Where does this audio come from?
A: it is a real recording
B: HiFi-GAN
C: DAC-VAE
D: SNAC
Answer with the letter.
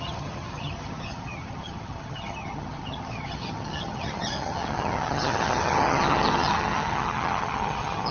B